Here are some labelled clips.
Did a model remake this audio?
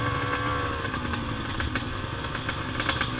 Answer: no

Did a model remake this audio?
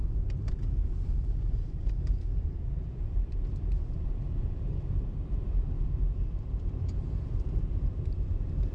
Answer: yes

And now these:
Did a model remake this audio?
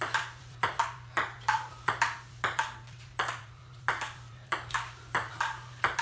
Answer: yes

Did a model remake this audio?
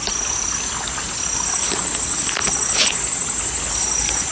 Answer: no